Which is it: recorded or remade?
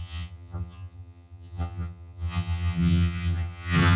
remade